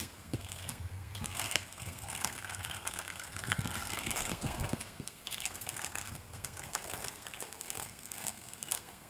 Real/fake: fake